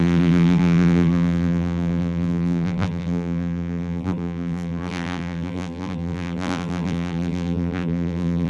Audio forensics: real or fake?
fake